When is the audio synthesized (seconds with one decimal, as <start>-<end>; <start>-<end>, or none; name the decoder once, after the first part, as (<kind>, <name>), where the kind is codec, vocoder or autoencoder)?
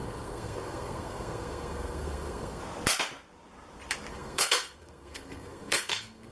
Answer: 0.0-2.6 (codec, SNAC); 4.1-6.3